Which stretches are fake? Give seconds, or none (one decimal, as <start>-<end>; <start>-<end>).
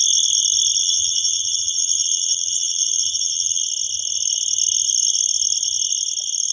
0.8-3.6